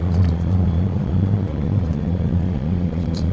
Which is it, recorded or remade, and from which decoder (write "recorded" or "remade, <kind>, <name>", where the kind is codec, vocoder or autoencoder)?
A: remade, vocoder, Vocos